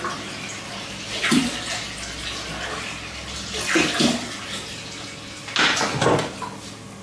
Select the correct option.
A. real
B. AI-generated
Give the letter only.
A